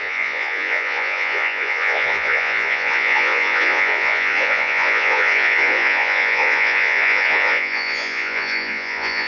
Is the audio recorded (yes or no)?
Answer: no